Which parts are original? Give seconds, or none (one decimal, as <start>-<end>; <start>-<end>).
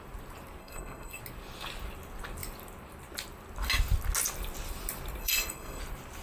0.0-0.6; 1.2-5.2; 5.8-6.2